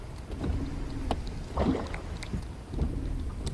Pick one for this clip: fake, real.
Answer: real